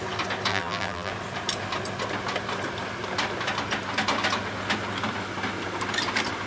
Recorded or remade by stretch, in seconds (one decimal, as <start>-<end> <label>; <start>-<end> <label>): 0.0-0.5 recorded; 0.5-1.1 remade; 1.1-6.5 recorded